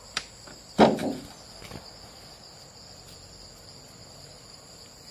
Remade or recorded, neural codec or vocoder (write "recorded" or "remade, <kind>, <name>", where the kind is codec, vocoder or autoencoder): remade, vocoder, BigVGAN v2